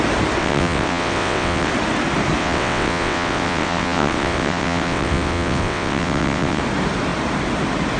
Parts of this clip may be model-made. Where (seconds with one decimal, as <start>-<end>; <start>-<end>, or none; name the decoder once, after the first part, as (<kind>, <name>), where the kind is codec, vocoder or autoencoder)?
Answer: 0.4-1.7 (vocoder, WaveNeXt); 2.4-6.6